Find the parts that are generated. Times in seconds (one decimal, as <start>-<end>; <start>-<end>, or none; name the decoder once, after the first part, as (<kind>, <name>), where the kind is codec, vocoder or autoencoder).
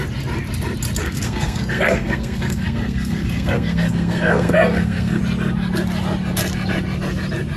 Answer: 1.0-5.2 (codec, SNAC)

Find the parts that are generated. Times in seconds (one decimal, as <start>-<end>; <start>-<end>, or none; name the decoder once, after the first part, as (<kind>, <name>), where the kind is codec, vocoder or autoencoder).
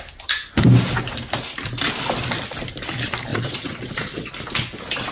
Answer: 3.3-4.3 (vocoder, Vocos)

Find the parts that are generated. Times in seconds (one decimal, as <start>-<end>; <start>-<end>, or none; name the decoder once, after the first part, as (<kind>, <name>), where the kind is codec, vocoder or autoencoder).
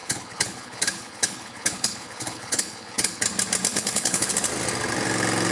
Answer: 0.0-3.2 (codec, HILCodec); 3.7-4.3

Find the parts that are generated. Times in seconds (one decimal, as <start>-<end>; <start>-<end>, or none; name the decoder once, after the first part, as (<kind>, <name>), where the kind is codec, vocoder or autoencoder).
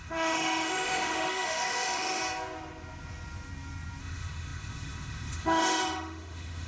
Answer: 0.0-2.2 (autoencoder, DAC-VAE); 4.0-6.7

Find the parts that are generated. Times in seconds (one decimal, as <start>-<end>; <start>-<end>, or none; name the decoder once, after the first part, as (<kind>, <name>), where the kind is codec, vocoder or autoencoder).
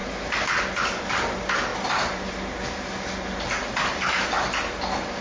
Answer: none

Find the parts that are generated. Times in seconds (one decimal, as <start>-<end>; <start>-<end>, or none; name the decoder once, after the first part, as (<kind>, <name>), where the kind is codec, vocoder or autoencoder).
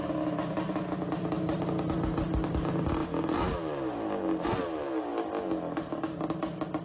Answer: none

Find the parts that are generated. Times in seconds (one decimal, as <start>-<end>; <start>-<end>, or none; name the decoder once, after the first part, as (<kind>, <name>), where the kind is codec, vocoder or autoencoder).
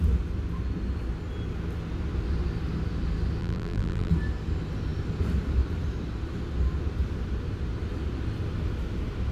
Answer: 3.4-4.1 (vocoder, BigVGAN v2)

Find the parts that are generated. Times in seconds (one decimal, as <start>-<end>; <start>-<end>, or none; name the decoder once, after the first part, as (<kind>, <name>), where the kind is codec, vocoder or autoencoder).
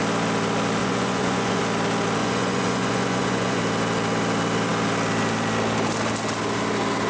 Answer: 0.8-1.6 (vocoder, Vocos); 2.2-3.6